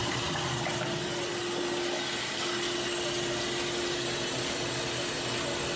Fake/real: fake